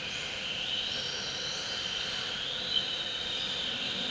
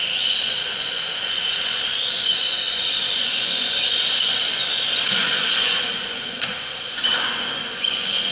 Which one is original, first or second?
first